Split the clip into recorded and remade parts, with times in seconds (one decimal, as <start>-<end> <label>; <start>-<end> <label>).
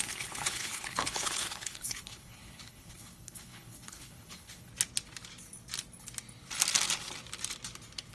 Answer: 0.0-4.7 remade; 4.7-8.1 recorded